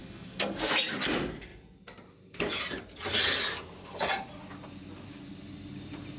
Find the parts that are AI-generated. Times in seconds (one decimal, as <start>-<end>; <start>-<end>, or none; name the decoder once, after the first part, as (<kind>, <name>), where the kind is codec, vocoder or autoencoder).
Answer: 0.0-0.7 (codec, SNAC)